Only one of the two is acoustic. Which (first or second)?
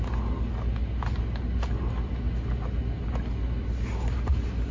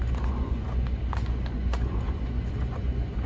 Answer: first